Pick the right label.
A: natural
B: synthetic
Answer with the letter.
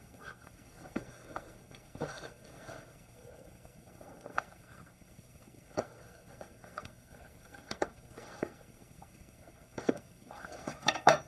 B